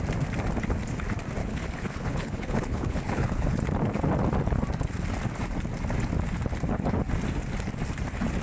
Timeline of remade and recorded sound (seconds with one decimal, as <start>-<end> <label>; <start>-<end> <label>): 0.0-1.4 recorded; 1.4-3.6 remade; 3.6-8.4 recorded